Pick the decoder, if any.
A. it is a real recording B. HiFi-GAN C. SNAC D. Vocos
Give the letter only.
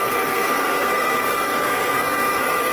C